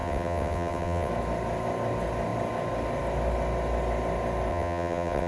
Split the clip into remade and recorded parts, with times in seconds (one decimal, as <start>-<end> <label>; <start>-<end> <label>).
0.0-1.1 remade; 1.1-4.5 recorded; 4.5-5.3 remade